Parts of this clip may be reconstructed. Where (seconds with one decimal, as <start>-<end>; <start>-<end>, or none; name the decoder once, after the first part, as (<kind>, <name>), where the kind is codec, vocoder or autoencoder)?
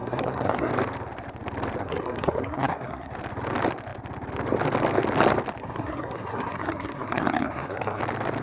0.0-0.7 (codec, SNAC); 1.8-3.1; 5.6-8.0